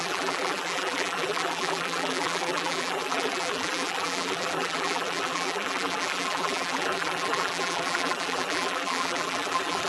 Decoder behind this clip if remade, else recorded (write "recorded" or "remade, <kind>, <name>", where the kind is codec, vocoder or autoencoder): remade, vocoder, BigVGAN v2